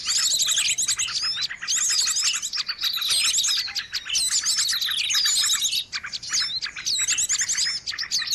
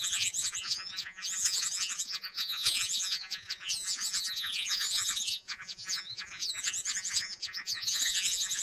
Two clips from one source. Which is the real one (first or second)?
first